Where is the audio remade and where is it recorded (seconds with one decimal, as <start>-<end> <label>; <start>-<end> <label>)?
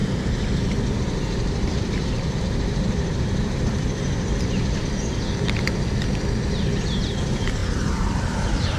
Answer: 0.0-4.8 remade; 4.8-7.6 recorded; 7.6-8.8 remade